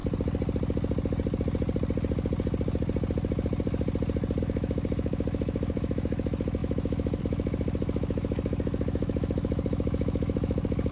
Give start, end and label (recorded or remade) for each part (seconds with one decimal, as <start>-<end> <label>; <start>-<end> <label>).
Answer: 0.0-4.4 recorded; 4.4-10.9 remade